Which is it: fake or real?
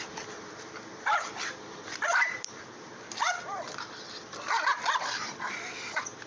fake